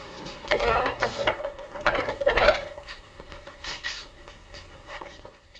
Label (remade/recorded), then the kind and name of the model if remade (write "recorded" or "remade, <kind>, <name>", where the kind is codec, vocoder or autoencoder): remade, codec, SNAC